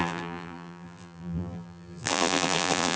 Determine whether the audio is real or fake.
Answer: fake